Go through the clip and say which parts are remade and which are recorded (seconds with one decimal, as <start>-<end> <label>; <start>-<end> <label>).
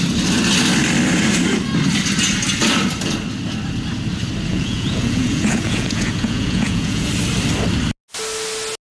0.0-4.5 recorded; 4.5-7.1 remade; 7.1-8.9 recorded